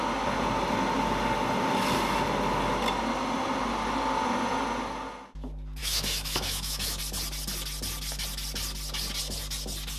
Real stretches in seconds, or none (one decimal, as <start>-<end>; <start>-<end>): 0.0-5.8; 7.0-10.0